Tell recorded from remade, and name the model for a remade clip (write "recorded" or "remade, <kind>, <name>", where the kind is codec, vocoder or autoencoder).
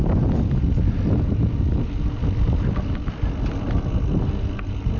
recorded